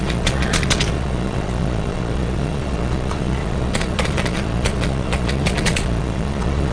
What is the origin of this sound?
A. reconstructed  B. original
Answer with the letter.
A